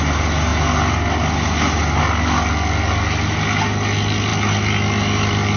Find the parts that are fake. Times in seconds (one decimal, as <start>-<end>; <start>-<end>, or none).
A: none